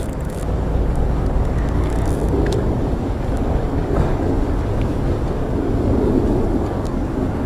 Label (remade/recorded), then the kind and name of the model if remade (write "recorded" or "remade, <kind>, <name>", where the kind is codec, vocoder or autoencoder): remade, codec, DAC